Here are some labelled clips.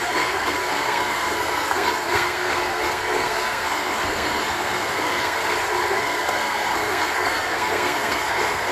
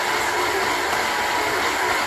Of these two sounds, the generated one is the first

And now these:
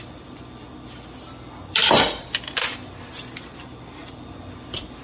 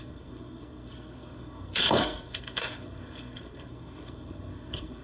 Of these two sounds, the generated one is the second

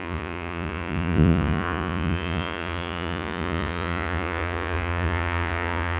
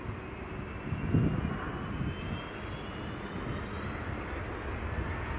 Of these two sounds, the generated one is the first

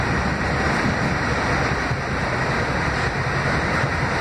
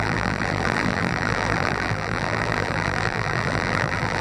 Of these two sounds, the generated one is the second